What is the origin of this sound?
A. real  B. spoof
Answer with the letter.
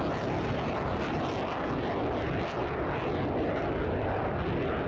A